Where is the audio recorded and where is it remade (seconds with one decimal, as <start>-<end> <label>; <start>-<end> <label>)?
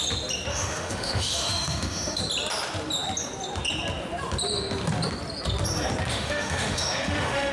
0.0-0.5 recorded; 0.5-2.2 remade; 2.2-6.1 recorded; 6.1-7.5 remade